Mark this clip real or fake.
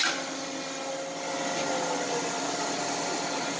real